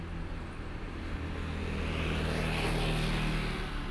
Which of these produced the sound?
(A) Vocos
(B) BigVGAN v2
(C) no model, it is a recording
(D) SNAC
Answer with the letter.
C